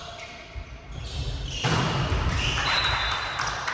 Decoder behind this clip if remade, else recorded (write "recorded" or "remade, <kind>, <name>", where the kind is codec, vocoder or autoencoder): remade, vocoder, BigVGAN v2